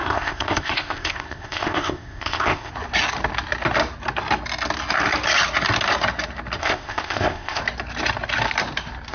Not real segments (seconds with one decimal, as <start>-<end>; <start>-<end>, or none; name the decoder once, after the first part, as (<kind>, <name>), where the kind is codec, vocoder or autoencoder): 0.0-2.7 (codec, ZipCodec); 6.6-7.6

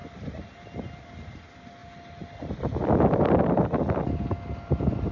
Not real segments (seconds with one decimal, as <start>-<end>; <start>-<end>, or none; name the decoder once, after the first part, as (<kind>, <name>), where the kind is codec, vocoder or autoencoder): none

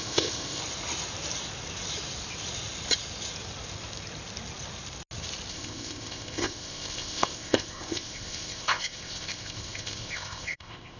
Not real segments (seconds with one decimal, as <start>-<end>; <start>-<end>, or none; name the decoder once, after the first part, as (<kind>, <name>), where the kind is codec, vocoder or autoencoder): 0.0-0.6 (codec, ZipCodec); 5.5-11.0

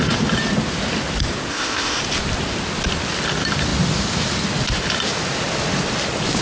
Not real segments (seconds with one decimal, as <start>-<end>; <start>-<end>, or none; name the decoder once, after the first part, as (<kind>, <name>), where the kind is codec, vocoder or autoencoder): 1.5-2.0 (codec, ZipCodec)

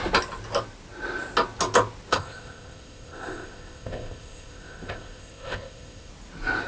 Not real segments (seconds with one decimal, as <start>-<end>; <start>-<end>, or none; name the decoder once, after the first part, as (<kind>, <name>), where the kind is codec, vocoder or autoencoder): 2.1-6.1 (codec, ZipCodec)

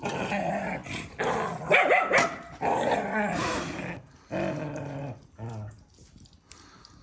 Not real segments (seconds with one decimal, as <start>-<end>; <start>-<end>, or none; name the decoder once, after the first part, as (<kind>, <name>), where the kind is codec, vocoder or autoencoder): none

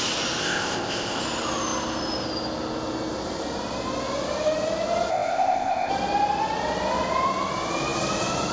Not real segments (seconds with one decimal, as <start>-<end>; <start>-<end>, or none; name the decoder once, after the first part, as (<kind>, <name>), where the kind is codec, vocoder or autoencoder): 0.4-1.2 (codec, ZipCodec); 5.1-5.9